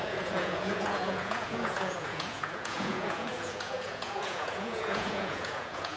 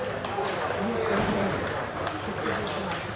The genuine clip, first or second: second